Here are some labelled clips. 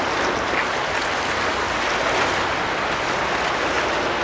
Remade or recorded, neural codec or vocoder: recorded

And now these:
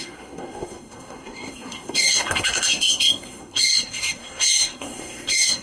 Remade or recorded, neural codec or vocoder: remade, codec, SNAC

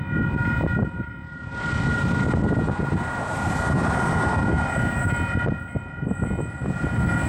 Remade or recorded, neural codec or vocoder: recorded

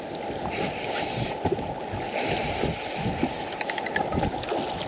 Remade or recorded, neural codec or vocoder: recorded